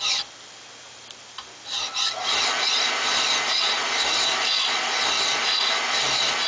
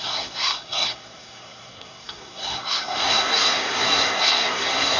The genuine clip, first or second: first